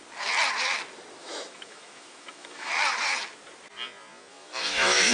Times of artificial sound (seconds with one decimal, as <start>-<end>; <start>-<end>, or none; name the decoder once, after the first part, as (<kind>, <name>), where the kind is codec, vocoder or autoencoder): 1.2-2.7 (autoencoder, DAC-VAE); 4.3-5.1